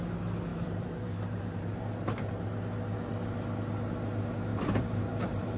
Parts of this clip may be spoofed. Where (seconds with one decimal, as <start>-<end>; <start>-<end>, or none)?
0.5-1.8; 4.5-5.6